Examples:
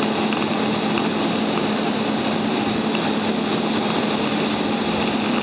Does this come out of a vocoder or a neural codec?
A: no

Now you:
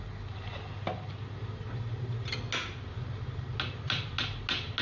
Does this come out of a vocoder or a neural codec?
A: no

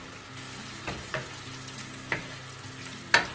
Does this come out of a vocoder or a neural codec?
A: no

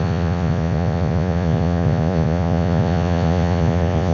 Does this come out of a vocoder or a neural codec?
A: yes